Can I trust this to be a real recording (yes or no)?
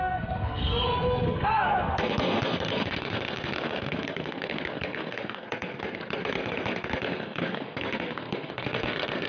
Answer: no